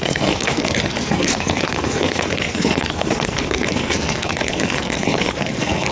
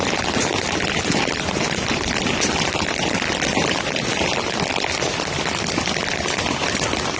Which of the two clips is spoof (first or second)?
first